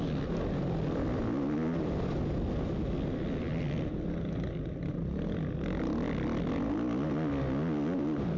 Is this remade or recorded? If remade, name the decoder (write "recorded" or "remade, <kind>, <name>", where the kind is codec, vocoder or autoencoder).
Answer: recorded